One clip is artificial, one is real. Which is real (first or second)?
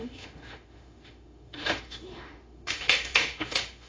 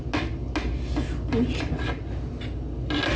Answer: second